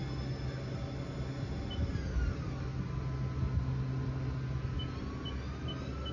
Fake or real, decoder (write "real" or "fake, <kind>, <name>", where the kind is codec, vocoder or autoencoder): real